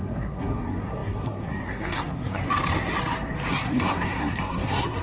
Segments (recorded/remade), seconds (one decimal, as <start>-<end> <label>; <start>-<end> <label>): 0.0-2.4 remade; 2.4-3.5 recorded; 3.5-5.0 remade